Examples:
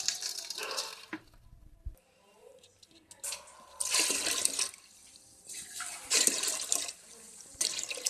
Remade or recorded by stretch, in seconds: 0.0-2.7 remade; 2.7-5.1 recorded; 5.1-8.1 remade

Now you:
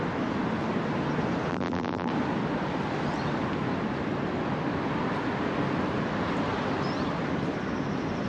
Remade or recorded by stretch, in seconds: 0.0-1.5 recorded; 1.5-2.1 remade; 2.1-8.3 recorded